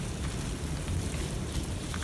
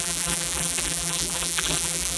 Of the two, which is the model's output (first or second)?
second